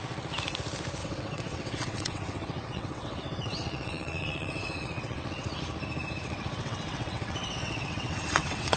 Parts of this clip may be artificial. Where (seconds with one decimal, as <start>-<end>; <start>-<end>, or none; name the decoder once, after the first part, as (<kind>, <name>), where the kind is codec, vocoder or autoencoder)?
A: 1.0-5.6 (vocoder, WaveNeXt); 6.2-8.8